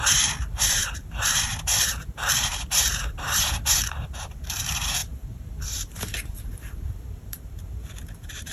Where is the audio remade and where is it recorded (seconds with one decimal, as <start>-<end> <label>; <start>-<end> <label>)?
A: 0.0-8.5 remade